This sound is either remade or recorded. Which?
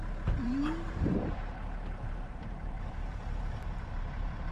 remade